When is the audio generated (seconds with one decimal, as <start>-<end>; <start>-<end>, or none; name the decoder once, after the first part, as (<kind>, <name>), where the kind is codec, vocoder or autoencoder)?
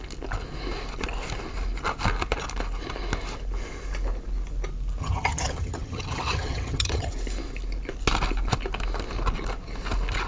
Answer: 5.0-7.1 (vocoder, HiFi-GAN)